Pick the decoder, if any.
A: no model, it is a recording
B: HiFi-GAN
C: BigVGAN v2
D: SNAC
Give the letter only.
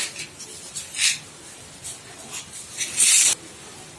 A